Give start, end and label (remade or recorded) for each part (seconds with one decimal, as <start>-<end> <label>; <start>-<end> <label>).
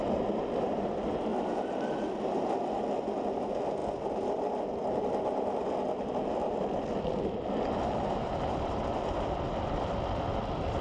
0.0-10.8 recorded